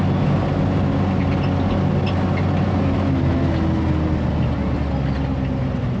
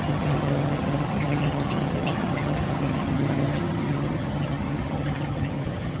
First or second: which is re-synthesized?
second